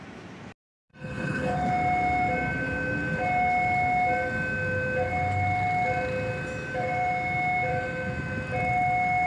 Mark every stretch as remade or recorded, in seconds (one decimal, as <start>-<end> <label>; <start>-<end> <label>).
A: 0.0-0.9 recorded; 0.9-1.7 remade; 1.7-9.3 recorded